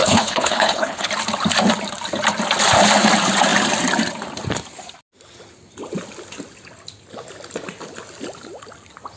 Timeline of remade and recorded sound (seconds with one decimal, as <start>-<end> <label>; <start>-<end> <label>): 0.0-1.1 remade; 1.1-9.2 recorded